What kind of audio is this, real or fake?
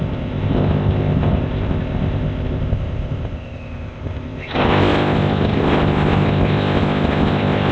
fake